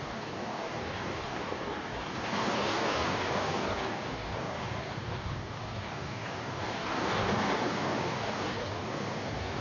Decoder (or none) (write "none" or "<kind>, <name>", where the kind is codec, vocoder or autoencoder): codec, DAC